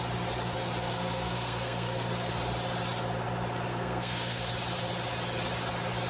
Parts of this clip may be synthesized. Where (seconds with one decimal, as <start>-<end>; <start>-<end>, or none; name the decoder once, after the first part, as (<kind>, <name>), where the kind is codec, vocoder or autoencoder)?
0.8-2.1 (codec, SNAC); 3.7-4.5